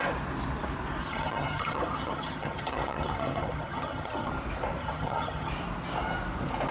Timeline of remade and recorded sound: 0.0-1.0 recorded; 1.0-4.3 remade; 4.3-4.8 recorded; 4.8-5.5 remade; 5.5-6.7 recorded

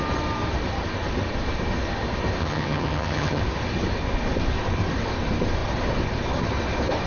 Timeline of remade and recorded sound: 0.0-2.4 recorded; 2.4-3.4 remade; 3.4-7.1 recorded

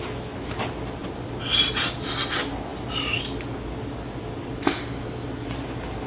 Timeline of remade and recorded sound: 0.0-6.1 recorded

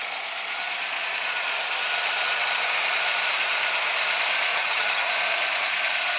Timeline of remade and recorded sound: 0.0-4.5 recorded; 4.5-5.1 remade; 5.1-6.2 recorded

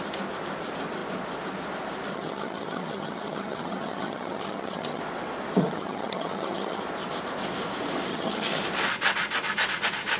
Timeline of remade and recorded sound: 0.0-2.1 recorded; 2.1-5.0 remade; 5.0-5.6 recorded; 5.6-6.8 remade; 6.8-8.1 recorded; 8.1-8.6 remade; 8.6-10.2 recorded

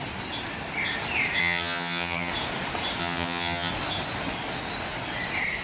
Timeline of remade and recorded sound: 0.0-1.4 recorded; 1.4-2.3 remade; 2.3-3.0 recorded; 3.0-3.7 remade; 3.7-5.6 recorded